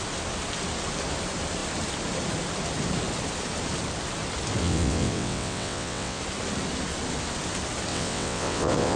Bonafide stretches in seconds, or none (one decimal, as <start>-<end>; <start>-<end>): 0.0-4.6; 6.2-7.9